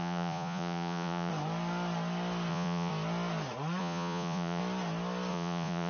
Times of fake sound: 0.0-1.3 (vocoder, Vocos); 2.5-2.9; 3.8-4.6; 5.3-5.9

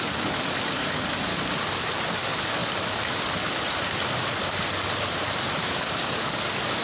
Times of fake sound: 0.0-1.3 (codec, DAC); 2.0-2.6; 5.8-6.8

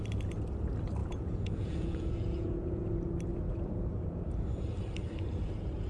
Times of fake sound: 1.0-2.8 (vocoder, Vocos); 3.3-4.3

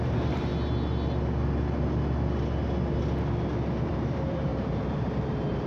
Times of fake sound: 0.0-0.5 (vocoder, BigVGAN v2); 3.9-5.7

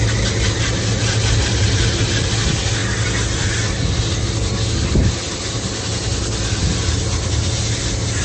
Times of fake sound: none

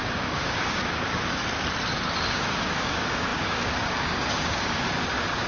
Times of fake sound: 0.0-1.4 (codec, DAC); 2.3-5.5

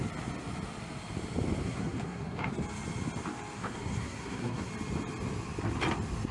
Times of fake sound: 1.6-2.5 (codec, SNAC); 3.6-4.7